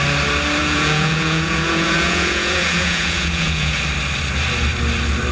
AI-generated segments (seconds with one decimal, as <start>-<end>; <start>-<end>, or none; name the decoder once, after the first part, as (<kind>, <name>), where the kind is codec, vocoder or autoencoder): 0.6-3.8 (vocoder, Vocos)

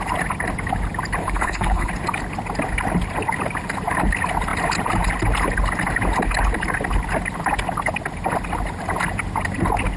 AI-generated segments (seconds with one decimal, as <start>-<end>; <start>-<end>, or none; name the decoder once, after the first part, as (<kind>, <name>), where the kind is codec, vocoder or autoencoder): 1.2-1.9 (codec, HILCodec)

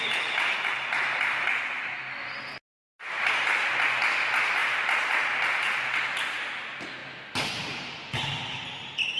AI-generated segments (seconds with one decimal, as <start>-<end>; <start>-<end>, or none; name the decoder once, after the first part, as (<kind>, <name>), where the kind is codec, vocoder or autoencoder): none

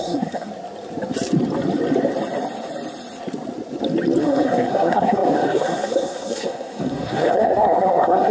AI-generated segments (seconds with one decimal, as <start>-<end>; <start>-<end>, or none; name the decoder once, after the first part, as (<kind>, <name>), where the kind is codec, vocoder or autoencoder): 0.0-0.5 (codec, SNAC); 4.2-8.3

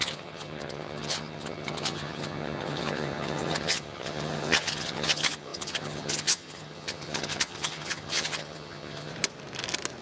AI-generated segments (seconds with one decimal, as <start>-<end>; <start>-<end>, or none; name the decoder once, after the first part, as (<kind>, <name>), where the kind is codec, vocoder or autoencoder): 0.0-9.1 (vocoder, HiFi-GAN)

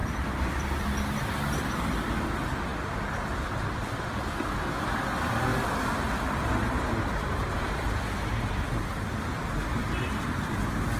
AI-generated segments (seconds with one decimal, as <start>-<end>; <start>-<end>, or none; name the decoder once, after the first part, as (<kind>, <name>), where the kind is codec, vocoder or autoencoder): 0.0-0.8 (vocoder, BigVGAN v2); 5.5-8.5

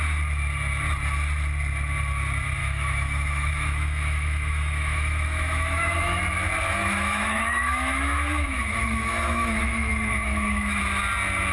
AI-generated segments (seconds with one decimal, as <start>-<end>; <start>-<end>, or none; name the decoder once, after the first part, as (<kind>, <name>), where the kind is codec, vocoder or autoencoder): 2.6-6.2 (autoencoder, DAC-VAE); 6.8-10.8